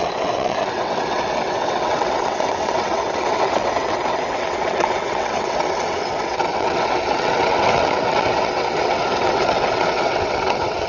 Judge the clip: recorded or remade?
remade